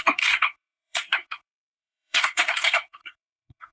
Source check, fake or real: fake